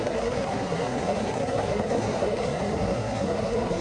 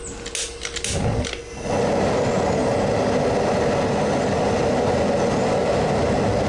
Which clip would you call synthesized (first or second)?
first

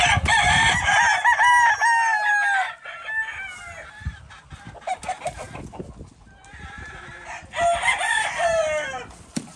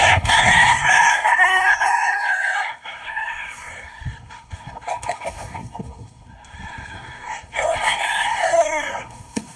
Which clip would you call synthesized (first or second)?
second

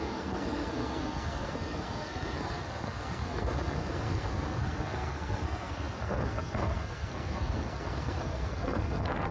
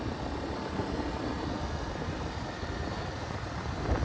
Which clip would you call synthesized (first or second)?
first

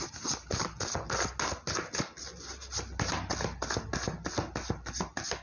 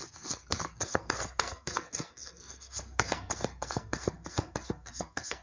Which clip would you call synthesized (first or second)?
second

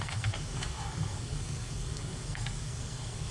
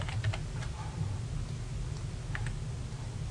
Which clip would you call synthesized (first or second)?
first